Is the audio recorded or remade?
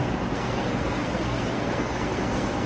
remade